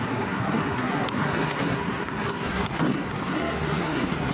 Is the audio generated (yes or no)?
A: yes